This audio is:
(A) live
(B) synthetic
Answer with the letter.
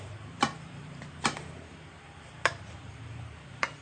B